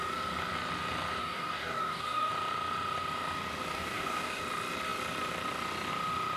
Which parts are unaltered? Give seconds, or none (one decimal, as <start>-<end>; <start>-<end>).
0.0-1.2; 2.3-3.7; 4.4-6.4